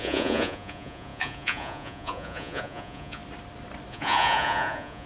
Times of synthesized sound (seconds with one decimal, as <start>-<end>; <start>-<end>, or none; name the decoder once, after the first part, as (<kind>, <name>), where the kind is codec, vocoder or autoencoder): 0.0-3.2 (vocoder, Vocos); 3.9-5.1